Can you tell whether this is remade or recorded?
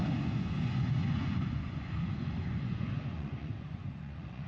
remade